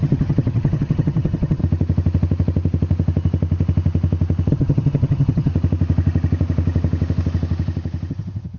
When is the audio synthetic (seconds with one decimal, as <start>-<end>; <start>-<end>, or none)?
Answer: 0.0-1.6; 4.5-5.5; 8.1-8.6

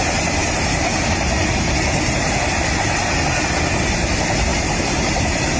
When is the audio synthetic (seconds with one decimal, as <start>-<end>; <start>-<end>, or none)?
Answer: 0.4-0.9; 4.5-5.6

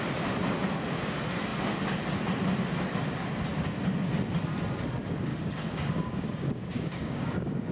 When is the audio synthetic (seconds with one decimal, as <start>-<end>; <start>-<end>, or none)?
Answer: 5.3-7.7

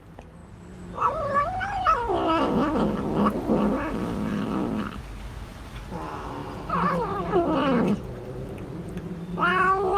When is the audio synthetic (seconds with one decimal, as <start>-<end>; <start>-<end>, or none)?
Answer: 4.3-5.0

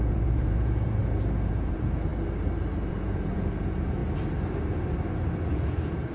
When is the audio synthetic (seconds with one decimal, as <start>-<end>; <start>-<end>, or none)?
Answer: 0.0-1.0; 1.5-2.1; 2.9-4.0; 5.5-6.1

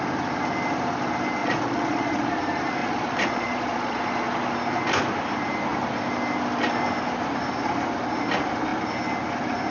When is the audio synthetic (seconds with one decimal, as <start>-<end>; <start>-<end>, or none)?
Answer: 1.4-2.3; 2.8-4.0

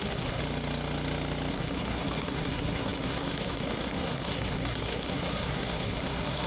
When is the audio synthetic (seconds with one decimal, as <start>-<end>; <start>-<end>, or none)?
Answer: 0.0-0.4; 1.5-6.5